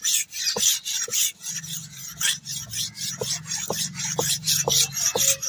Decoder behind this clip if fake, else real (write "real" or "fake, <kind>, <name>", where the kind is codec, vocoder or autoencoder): real